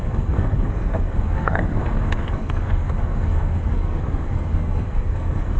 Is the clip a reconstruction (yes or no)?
yes